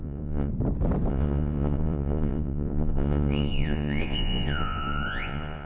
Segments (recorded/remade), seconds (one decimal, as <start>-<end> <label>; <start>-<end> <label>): 0.0-0.5 remade; 0.5-1.1 recorded; 1.1-5.7 remade